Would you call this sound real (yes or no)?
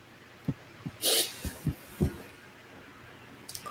yes